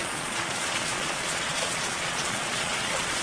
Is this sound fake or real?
fake